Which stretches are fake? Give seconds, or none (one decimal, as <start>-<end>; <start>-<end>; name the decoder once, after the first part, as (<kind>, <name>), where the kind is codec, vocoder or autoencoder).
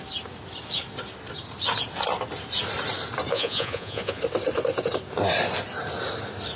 3.3-4.2 (vocoder, Vocos)